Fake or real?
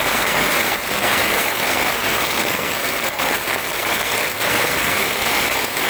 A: fake